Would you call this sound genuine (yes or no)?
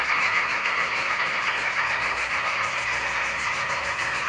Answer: no